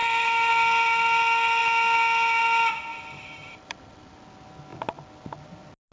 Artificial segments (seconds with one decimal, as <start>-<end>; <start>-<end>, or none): 0.0-0.5; 2.9-4.2